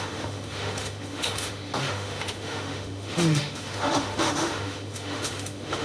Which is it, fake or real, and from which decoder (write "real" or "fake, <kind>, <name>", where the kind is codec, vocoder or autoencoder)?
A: fake, autoencoder, DAC-VAE